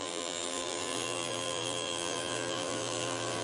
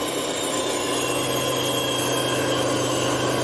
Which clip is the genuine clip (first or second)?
second